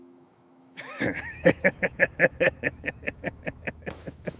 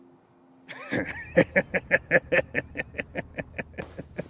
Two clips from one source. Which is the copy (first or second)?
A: first